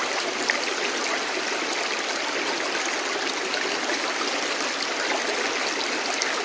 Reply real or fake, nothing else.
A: real